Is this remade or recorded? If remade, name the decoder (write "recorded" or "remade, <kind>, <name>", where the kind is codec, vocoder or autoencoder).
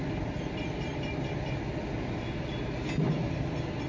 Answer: recorded